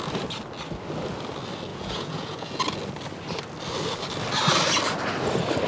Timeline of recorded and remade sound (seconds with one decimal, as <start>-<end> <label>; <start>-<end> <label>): 0.0-1.7 recorded; 1.7-2.5 remade; 2.5-5.7 recorded